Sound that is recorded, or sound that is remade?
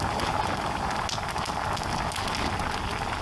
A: recorded